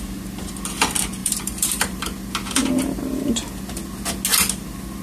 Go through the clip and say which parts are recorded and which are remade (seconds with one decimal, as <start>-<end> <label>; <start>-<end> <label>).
0.0-1.2 recorded; 1.2-2.0 remade; 2.0-5.0 recorded

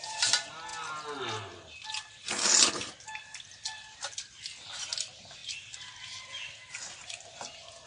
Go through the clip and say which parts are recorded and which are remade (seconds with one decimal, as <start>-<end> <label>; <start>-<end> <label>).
0.0-7.9 recorded

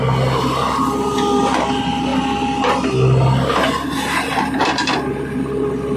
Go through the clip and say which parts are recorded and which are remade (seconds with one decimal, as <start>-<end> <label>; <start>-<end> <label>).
0.0-6.0 recorded

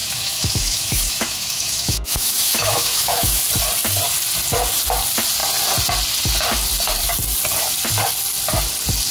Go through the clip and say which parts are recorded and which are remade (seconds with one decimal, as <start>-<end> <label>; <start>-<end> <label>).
0.0-3.4 remade; 3.4-9.1 recorded

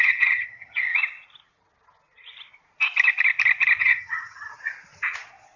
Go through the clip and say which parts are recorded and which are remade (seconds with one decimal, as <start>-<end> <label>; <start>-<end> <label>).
0.0-0.9 remade; 0.9-3.8 recorded; 3.8-4.5 remade; 4.5-5.6 recorded

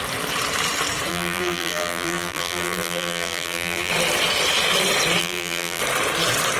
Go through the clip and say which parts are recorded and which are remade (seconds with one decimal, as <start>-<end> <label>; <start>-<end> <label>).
0.0-1.1 recorded; 1.1-3.9 remade; 3.9-5.2 recorded; 5.2-5.8 remade; 5.8-6.6 recorded

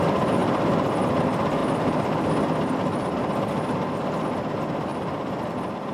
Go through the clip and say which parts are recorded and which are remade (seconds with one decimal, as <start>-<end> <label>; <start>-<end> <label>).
0.0-4.9 recorded; 4.9-5.9 remade